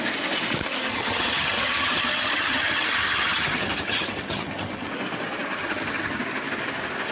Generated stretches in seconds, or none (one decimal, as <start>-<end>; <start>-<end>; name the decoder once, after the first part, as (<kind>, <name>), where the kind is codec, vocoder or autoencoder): 0.9-4.9 (vocoder, HiFi-GAN); 5.6-6.2